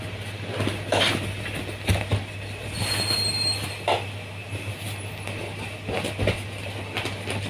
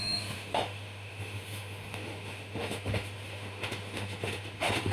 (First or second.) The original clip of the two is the first